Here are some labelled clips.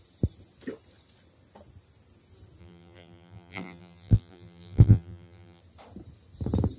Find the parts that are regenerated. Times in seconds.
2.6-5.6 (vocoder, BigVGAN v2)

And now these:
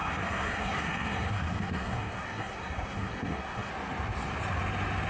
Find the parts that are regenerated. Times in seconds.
0.0-3.7 (codec, SNAC)

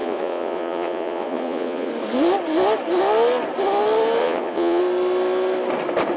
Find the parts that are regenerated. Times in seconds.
0.0-1.9 (vocoder, Vocos); 4.2-4.8

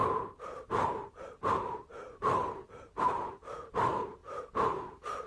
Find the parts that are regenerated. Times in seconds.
0.0-4.2 (vocoder, BigVGAN v2)

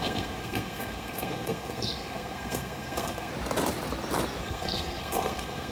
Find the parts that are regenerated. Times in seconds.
0.0-3.3 (codec, SNAC); 4.4-5.7

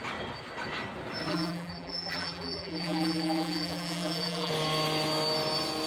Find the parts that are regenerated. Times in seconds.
1.3-4.5 (vocoder, BigVGAN v2)

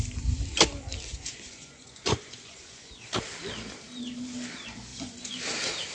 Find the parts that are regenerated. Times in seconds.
1.1-2.9 (vocoder, Vocos); 4.9-5.4

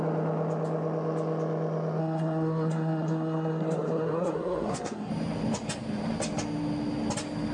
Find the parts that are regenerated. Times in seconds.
2.0-5.1 (codec, SNAC)